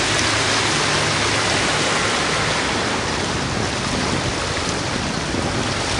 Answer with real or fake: real